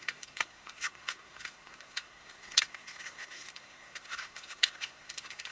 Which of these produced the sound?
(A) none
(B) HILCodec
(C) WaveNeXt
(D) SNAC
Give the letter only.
D